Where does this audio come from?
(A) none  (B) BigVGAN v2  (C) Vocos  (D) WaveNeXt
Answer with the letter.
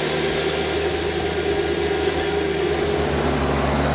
A